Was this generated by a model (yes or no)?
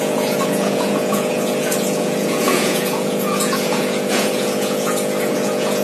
yes